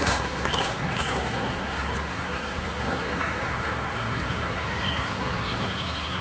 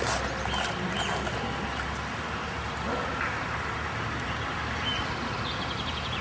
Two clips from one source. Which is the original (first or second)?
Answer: second